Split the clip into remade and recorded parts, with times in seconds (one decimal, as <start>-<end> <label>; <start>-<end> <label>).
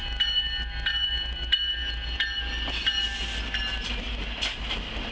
0.0-5.1 recorded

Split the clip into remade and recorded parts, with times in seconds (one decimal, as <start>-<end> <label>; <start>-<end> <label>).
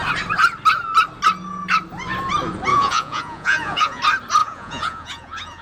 0.0-2.7 recorded; 2.7-4.0 remade; 4.0-4.4 recorded; 4.4-5.6 remade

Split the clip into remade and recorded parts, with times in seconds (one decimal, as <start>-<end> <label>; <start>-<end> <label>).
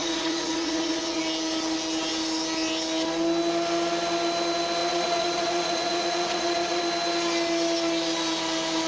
0.0-1.2 remade; 1.2-4.8 recorded; 4.8-6.8 remade; 6.8-8.9 recorded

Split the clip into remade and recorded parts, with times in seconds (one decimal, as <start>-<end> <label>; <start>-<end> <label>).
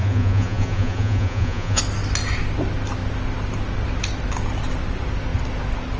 0.0-1.8 remade; 1.8-6.0 recorded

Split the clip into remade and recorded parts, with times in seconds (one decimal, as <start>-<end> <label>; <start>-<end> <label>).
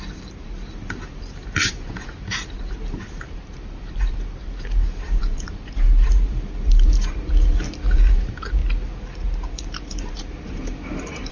0.0-8.6 remade; 8.6-9.5 recorded; 9.5-11.3 remade